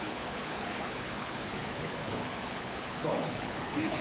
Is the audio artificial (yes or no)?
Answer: yes